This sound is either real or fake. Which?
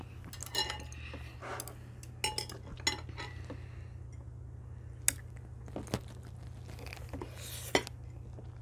real